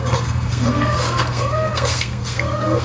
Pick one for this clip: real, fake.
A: fake